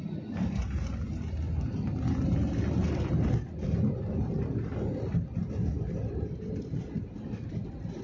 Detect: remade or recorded recorded